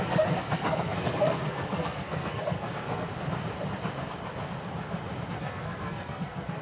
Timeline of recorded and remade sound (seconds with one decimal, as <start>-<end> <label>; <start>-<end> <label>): 0.0-3.1 remade; 3.1-5.3 recorded; 5.3-6.6 remade